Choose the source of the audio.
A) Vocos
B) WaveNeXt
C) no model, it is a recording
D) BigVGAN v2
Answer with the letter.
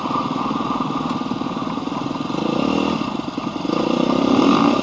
C